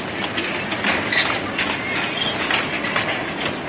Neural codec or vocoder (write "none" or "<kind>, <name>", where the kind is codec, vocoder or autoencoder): none